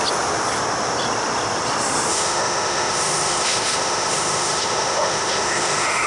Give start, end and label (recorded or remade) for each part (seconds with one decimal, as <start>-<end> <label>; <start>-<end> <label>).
0.0-2.1 recorded; 2.1-6.1 remade